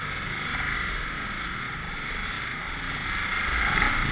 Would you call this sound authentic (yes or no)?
yes